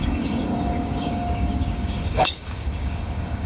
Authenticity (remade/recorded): remade